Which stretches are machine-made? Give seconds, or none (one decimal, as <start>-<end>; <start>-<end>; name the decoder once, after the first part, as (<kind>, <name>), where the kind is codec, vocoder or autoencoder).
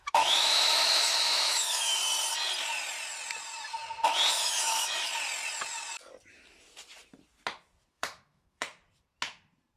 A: 0.0-2.0 (autoencoder, DAC-VAE); 4.3-5.1; 7.9-8.6